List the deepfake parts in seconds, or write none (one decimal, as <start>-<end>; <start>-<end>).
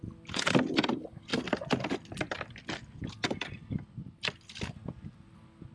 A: none